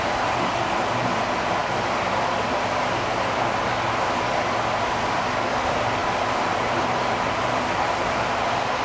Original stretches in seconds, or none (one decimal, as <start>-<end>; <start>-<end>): 0.0-8.8

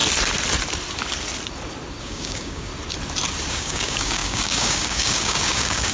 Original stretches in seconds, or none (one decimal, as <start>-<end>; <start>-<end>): 0.0-2.0; 2.7-3.5